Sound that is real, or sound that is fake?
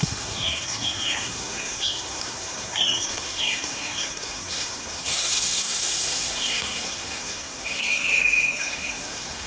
fake